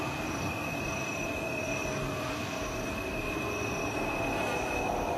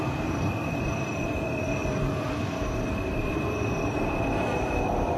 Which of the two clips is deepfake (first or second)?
second